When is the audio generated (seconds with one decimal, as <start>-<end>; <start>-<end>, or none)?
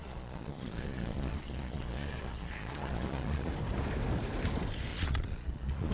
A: 0.0-3.5; 4.9-5.9